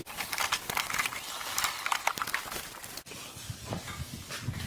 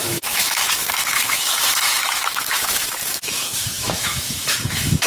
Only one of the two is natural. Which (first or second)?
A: first